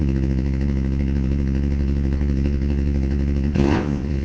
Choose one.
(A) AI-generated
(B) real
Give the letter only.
A